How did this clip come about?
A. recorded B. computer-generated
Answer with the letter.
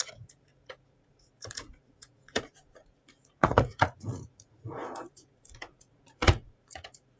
B